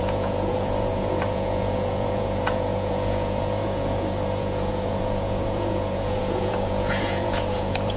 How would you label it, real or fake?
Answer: fake